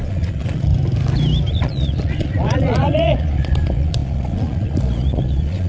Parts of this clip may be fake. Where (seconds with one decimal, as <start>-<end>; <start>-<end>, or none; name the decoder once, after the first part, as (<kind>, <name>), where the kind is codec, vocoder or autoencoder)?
0.0-0.7 (vocoder, Vocos); 1.5-5.7